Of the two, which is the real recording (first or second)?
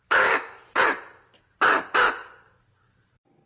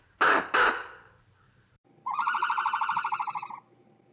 first